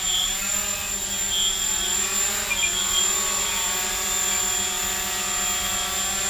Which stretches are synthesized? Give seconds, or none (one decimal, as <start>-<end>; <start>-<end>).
none